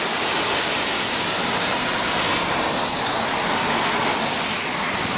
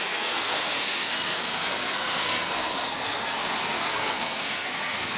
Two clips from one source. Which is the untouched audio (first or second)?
first